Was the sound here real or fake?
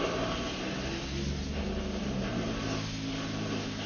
real